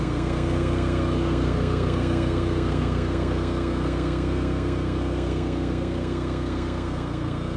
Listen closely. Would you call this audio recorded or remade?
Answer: remade